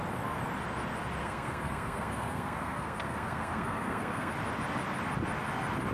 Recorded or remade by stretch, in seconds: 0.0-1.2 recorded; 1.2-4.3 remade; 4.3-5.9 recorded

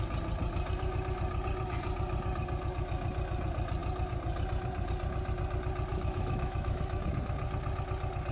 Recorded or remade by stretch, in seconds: 0.0-5.9 recorded; 5.9-7.1 remade; 7.1-8.3 recorded

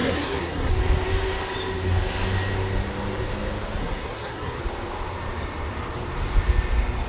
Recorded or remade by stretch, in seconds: 0.0-0.7 remade; 0.7-3.8 recorded; 3.8-4.6 remade; 4.6-7.1 recorded

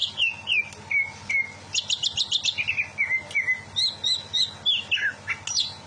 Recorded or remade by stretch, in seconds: 0.0-5.9 recorded

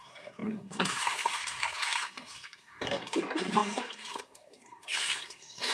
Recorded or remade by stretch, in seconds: 0.0-5.7 remade

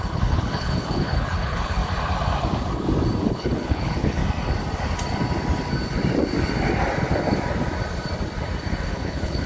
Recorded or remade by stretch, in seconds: 0.0-1.8 remade; 1.8-3.3 recorded; 3.3-4.2 remade; 4.2-8.8 recorded; 8.8-9.5 remade